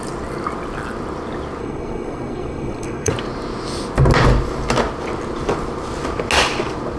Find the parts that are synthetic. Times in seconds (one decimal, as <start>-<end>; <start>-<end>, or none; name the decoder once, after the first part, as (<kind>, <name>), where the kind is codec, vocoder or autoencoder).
1.6-3.1 (codec, SNAC)